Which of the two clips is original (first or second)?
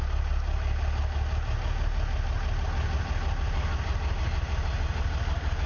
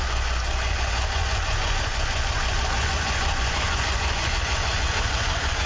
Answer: first